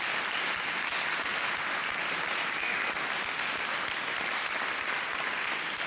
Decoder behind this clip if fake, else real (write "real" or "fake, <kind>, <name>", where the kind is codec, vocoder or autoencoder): real